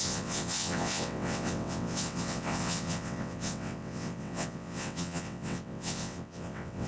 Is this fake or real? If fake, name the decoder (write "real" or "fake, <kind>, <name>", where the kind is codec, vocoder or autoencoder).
fake, vocoder, WaveNeXt